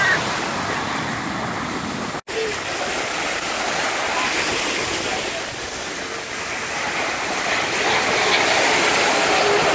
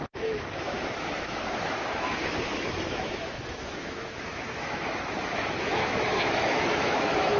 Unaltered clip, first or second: first